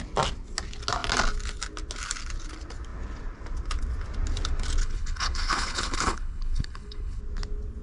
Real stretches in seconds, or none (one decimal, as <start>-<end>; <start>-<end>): 0.0-4.8; 7.2-7.8